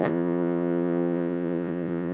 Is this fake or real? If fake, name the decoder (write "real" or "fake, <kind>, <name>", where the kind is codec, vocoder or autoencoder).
fake, vocoder, Vocos